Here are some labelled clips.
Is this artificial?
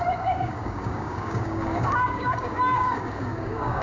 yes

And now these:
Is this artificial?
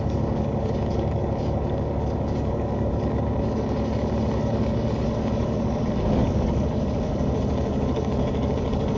yes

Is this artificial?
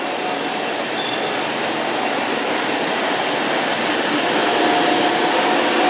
no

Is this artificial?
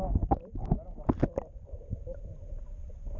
no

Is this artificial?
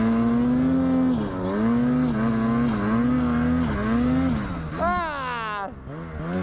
no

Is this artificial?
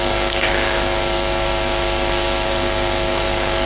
yes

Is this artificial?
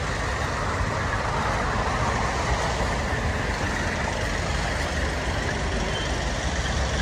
no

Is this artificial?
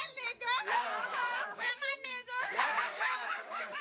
yes